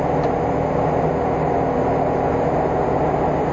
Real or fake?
real